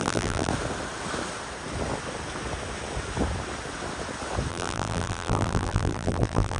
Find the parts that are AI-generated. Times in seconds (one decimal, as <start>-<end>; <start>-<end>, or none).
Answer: 0.0-0.5; 4.5-6.6